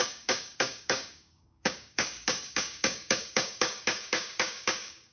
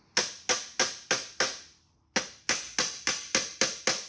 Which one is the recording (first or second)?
second